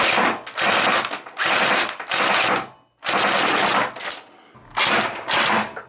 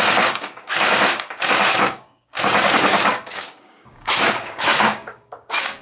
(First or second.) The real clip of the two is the first